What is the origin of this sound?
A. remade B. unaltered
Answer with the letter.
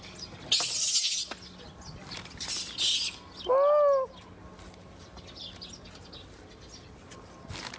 B